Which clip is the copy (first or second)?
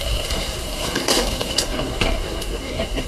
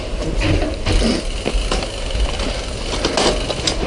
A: first